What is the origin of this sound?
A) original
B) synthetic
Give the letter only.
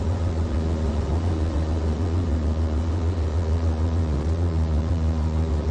B